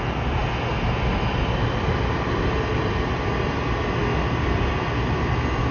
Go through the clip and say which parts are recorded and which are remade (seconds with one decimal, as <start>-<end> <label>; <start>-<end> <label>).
0.0-5.7 recorded